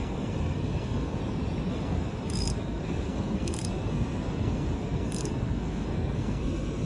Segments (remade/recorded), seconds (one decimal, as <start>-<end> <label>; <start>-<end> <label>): 0.0-1.2 remade; 1.2-1.7 recorded; 1.7-6.9 remade